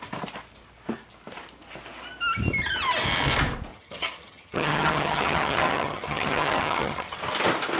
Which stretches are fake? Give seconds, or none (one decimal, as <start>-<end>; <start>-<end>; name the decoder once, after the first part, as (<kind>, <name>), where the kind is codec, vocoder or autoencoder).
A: 3.7-7.2 (vocoder, HiFi-GAN)